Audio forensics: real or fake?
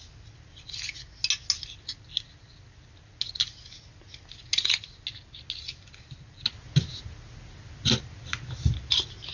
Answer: real